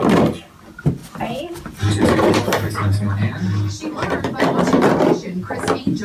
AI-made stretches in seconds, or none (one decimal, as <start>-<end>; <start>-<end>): none